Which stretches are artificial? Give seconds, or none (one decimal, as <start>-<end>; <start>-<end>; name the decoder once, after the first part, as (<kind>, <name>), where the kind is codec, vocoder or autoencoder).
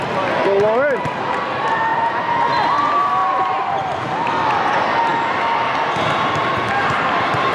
none